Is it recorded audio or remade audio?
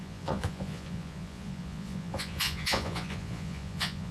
remade